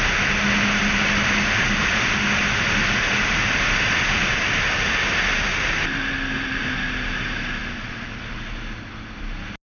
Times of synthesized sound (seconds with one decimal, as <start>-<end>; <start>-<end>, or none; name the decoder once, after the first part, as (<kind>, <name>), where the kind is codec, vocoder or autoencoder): none